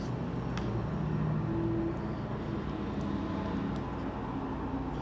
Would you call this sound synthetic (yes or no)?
no